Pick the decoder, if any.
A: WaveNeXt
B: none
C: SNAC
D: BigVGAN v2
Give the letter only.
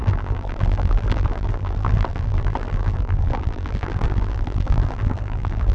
D